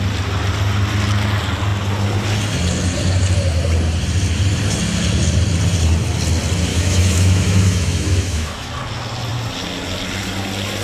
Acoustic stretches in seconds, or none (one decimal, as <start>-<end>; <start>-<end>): 0.0-6.7; 8.7-10.8